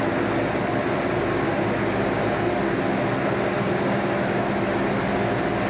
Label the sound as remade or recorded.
recorded